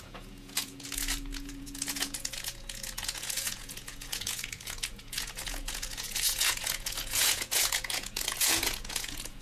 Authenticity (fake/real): fake